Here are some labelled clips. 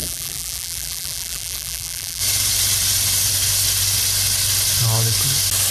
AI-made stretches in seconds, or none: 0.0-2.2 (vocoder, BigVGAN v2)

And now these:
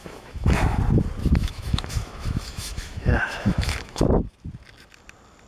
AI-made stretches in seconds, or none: 0.0-0.8 (autoencoder, DAC-VAE); 1.4-4.0

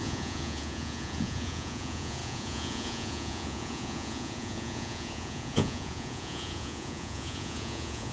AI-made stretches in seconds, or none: 0.0-8.1 (vocoder, Vocos)

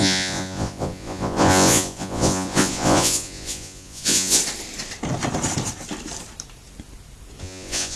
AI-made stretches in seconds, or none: 0.0-4.4 (vocoder, Vocos); 7.4-8.0

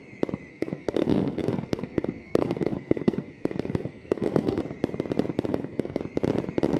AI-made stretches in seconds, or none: 0.5-4.6 (codec, SNAC); 5.5-6.0